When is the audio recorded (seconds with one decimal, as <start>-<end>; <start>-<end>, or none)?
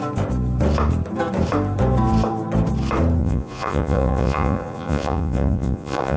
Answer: 0.0-3.2